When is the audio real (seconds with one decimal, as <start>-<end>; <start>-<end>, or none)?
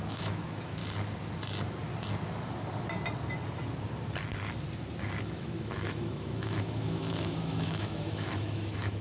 0.8-5.2